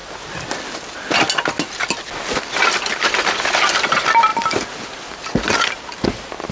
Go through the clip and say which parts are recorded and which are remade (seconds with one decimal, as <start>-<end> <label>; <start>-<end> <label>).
0.0-6.5 recorded